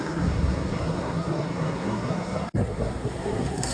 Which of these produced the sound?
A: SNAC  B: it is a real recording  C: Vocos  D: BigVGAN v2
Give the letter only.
A